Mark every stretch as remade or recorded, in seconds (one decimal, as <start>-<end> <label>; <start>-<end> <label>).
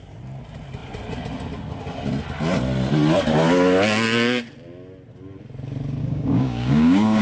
0.0-6.0 recorded; 6.0-7.2 remade